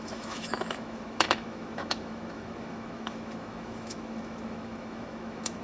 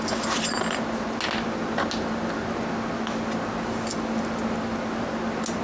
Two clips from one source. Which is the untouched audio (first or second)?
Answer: second